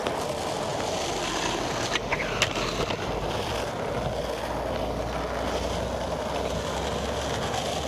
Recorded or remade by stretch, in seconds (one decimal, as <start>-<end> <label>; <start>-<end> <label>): 0.0-0.7 recorded; 0.7-3.8 remade; 3.8-7.9 recorded